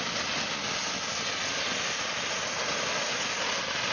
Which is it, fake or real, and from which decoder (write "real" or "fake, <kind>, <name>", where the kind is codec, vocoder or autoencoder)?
real